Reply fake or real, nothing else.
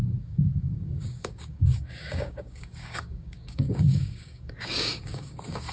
fake